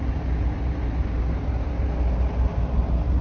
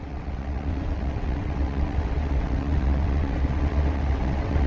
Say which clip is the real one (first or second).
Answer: first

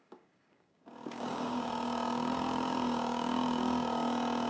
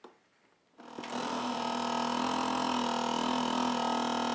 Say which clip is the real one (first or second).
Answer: second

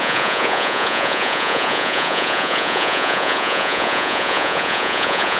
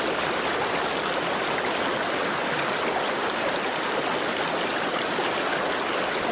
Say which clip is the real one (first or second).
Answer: second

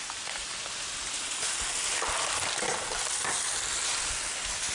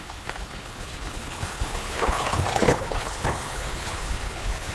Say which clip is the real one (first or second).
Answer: first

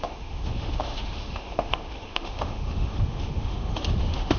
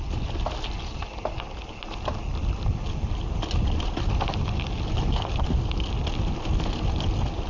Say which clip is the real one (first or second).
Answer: second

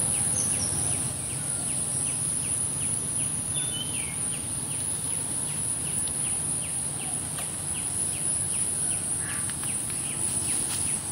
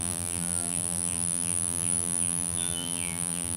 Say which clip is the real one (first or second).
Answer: first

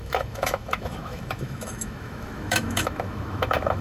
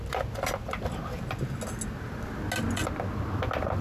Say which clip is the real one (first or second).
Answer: second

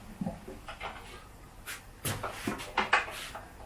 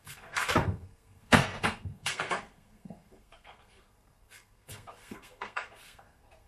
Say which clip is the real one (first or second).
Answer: first